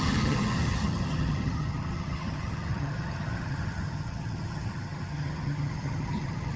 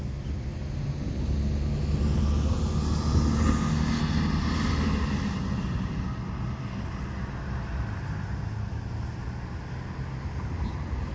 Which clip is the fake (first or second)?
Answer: first